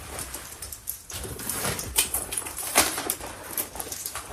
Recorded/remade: remade